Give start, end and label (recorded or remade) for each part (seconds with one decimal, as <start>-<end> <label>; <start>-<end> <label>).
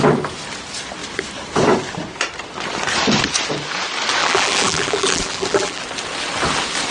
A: 0.0-4.2 recorded; 4.2-5.8 remade; 5.8-6.9 recorded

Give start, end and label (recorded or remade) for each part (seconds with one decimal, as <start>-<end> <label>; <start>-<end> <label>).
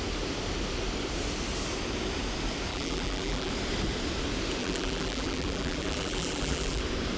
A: 0.0-2.7 recorded; 2.7-3.5 remade; 3.5-4.6 recorded; 4.6-6.8 remade; 6.8-7.2 recorded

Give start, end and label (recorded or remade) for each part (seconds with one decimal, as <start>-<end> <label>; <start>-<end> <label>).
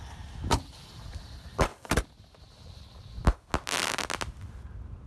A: 0.0-5.1 recorded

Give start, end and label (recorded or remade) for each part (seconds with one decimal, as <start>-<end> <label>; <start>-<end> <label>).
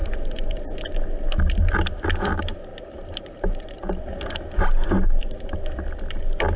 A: 0.0-0.8 remade; 0.8-2.7 recorded; 2.7-3.8 remade; 3.8-6.6 recorded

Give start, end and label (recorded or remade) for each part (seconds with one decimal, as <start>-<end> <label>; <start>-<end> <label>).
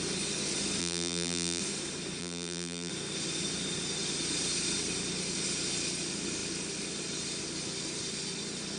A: 0.0-0.8 recorded; 0.8-1.6 remade; 1.6-2.2 recorded; 2.2-2.9 remade; 2.9-8.8 recorded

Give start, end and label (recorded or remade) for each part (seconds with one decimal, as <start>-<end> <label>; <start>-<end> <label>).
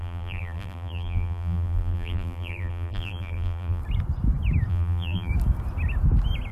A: 0.0-3.8 remade; 3.8-4.7 recorded; 4.7-5.3 remade; 5.3-6.5 recorded